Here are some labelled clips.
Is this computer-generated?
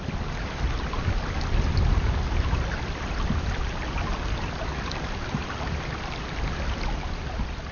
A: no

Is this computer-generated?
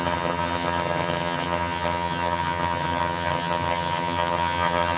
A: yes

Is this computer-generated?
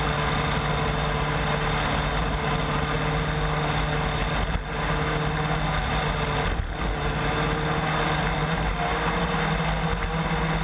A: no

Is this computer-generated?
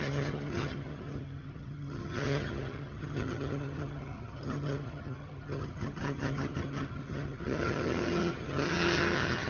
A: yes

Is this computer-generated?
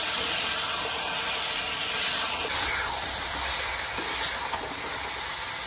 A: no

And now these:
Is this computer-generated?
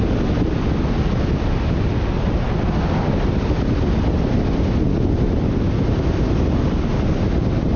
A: no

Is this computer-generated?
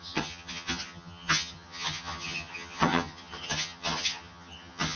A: yes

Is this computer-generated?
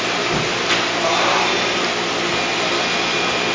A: no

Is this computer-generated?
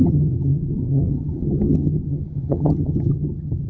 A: yes